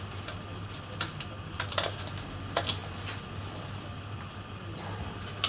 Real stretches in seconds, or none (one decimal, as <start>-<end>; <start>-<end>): 0.0-5.5